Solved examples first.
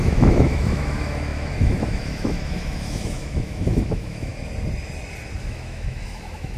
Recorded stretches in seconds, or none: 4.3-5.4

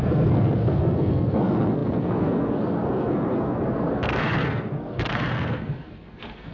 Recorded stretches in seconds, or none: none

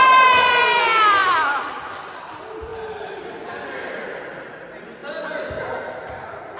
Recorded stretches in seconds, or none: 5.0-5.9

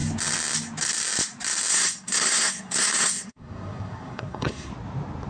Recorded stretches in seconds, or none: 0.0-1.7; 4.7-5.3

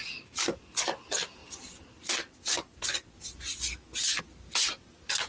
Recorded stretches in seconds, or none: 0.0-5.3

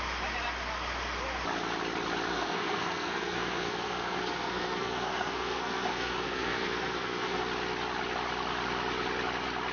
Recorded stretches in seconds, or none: 0.0-2.3; 7.4-9.7